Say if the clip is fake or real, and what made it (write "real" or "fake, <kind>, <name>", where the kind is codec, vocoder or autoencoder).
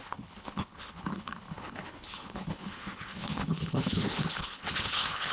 fake, codec, HILCodec